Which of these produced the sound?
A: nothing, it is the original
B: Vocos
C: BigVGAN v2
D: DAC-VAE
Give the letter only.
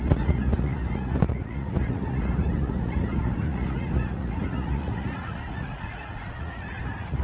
B